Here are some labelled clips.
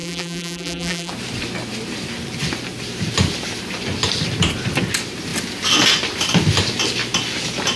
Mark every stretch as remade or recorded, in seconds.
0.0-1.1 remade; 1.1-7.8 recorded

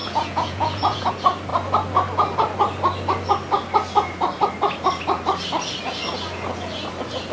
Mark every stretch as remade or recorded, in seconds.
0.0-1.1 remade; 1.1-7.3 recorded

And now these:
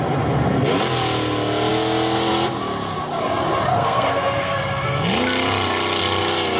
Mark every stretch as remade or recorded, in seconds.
0.0-3.7 recorded; 3.7-4.6 remade; 4.6-6.6 recorded